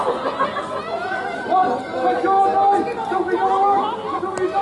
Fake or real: real